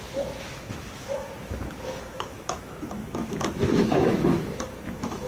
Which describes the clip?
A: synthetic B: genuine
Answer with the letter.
A